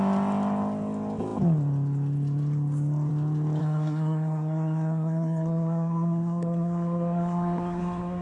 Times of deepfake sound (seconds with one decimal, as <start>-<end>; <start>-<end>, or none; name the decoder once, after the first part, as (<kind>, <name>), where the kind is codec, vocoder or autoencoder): 3.6-8.2 (codec, SNAC)